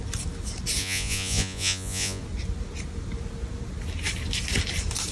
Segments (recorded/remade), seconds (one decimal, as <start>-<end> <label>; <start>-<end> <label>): 0.0-0.8 recorded; 0.8-2.2 remade; 2.2-5.1 recorded